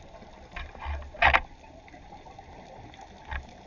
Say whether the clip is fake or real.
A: real